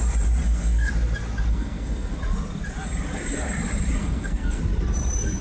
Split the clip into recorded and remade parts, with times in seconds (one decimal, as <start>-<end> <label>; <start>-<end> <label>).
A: 0.0-0.4 recorded; 0.4-0.9 remade; 0.9-1.5 recorded; 1.5-2.2 remade; 2.2-4.0 recorded; 4.0-4.6 remade; 4.6-5.4 recorded